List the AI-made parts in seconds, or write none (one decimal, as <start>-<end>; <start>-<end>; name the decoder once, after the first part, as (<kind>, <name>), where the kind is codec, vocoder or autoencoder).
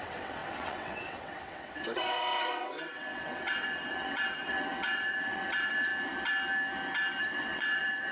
0.0-5.9 (vocoder, WaveNeXt); 7.2-8.1